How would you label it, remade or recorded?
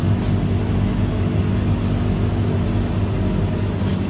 recorded